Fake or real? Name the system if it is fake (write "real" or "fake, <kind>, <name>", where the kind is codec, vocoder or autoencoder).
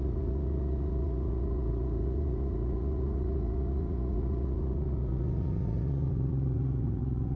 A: fake, vocoder, Vocos